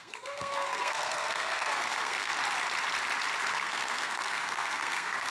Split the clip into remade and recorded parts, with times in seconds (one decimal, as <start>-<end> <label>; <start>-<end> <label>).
0.0-2.3 remade; 2.3-3.5 recorded; 3.5-5.3 remade